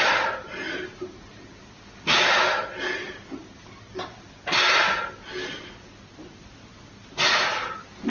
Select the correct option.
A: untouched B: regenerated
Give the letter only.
A